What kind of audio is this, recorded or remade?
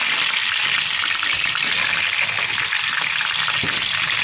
recorded